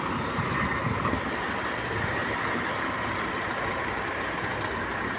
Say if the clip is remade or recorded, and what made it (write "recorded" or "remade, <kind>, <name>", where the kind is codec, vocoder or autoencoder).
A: recorded